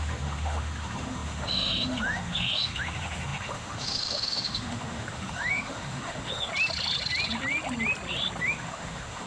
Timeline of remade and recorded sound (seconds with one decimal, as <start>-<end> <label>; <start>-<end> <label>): 0.0-6.5 remade; 6.5-8.4 recorded; 8.4-9.3 remade